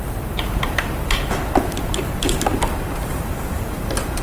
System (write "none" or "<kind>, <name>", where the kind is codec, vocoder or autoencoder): vocoder, BigVGAN v2